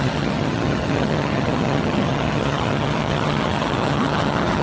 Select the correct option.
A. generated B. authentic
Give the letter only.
A